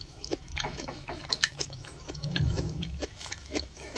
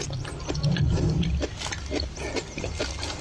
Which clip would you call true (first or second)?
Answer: second